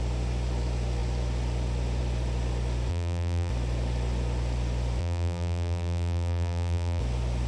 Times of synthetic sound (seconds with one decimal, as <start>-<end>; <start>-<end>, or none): 2.9-3.5; 5.0-7.0